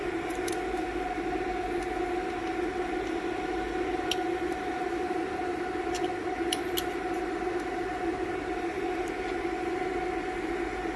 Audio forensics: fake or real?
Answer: real